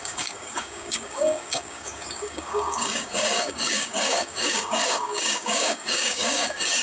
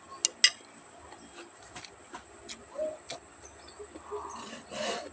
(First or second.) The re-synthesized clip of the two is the first